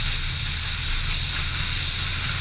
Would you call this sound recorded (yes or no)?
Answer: yes